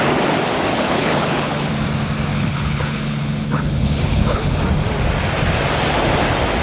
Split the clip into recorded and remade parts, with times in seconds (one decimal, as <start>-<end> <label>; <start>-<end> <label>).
0.0-0.7 recorded; 0.7-1.7 remade; 1.7-2.3 recorded; 2.3-4.6 remade; 4.6-6.6 recorded